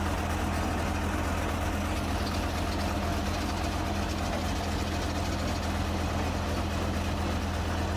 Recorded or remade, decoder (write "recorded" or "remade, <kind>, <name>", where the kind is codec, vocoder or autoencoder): recorded